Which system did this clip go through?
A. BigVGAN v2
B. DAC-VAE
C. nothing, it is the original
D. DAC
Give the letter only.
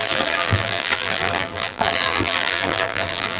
A